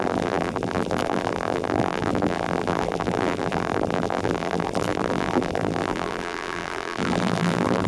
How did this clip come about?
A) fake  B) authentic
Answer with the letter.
A